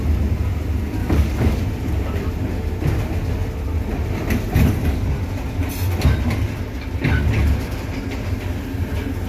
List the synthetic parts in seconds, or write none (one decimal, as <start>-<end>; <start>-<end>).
1.0-1.6